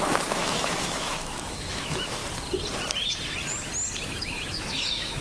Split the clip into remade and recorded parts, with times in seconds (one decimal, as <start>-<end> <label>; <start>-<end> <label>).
0.0-2.2 remade; 2.2-4.1 recorded; 4.1-5.2 remade